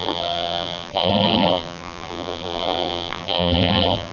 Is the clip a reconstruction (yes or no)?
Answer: yes